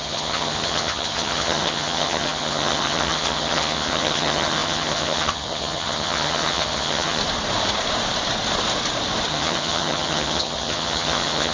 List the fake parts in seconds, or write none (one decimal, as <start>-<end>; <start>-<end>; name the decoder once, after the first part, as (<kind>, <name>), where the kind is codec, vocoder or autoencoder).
0.0-7.2 (vocoder, HiFi-GAN); 9.3-11.5